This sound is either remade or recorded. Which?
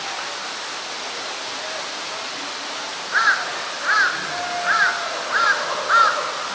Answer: recorded